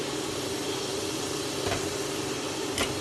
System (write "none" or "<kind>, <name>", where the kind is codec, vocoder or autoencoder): none